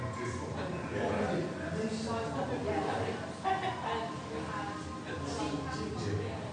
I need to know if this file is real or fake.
real